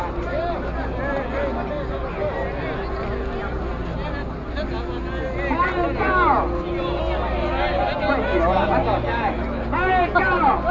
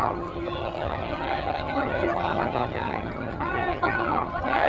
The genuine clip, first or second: first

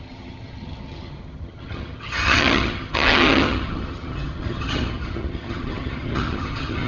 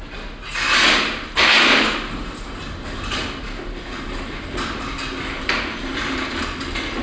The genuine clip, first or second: second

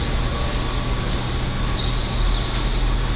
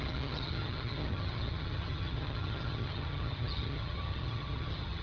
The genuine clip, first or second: first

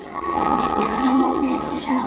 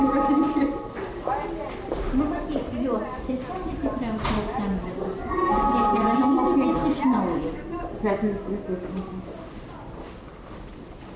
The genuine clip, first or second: second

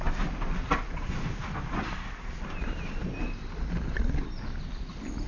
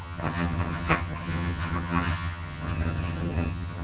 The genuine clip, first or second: first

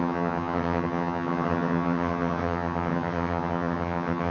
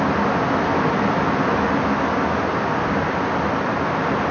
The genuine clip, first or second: second